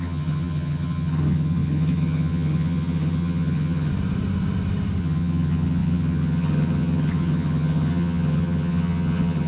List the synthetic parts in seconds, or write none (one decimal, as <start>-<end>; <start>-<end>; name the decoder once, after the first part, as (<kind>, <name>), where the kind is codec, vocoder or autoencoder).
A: 0.0-3.9 (vocoder, HiFi-GAN); 5.0-9.5